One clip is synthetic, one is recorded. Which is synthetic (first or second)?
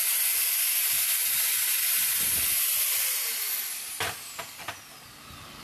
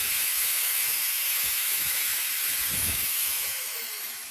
second